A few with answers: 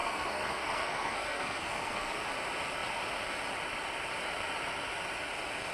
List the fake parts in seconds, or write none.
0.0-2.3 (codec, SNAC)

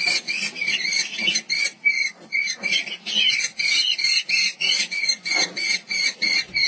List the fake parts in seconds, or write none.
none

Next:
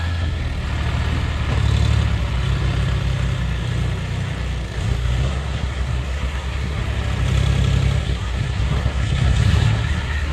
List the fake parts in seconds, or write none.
0.0-0.4 (codec, SNAC); 4.8-6.8; 8.0-10.3

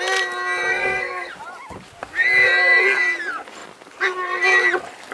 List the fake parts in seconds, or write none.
0.7-1.3 (codec, SNAC)